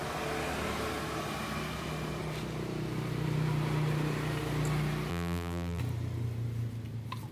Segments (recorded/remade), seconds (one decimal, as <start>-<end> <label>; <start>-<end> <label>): 0.0-5.1 recorded; 5.1-5.8 remade; 5.8-7.3 recorded